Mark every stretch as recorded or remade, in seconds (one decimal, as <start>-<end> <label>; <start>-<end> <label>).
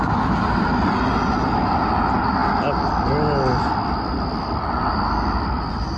0.0-6.0 recorded